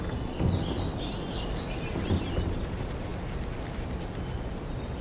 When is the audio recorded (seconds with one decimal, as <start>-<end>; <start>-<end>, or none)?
0.0-5.0